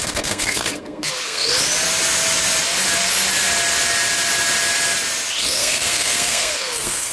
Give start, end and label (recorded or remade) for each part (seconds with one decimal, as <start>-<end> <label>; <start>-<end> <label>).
0.0-1.5 remade; 1.5-5.4 recorded; 5.4-7.1 remade